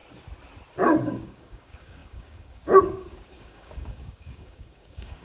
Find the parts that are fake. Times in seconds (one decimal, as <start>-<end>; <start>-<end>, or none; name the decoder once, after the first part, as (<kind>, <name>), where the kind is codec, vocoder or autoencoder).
1.0-5.2 (codec, DAC)